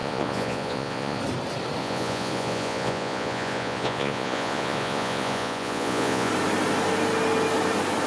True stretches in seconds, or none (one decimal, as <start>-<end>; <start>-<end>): 1.2-1.8; 6.3-8.1